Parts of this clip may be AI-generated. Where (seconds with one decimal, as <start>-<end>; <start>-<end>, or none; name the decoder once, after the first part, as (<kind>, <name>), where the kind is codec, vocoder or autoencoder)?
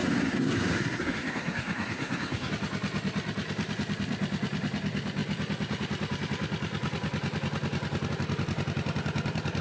0.0-2.5 (codec, SNAC)